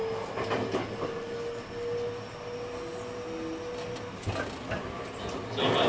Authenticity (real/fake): real